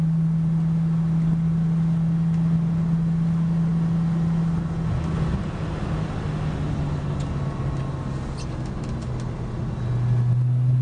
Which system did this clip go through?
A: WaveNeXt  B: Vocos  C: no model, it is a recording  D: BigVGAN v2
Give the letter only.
C